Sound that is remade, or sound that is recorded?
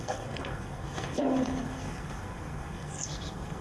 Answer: remade